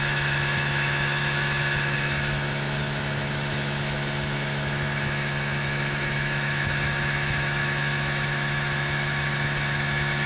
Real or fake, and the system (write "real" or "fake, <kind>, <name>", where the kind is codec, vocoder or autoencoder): fake, autoencoder, DAC-VAE